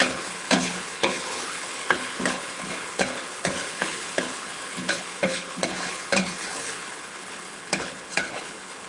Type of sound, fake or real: fake